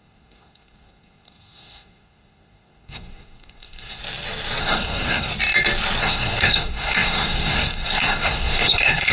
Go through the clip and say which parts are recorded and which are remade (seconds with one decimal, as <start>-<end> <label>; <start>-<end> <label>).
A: 0.0-4.0 remade; 4.0-4.6 recorded; 4.6-5.3 remade; 5.3-6.0 recorded; 6.0-9.1 remade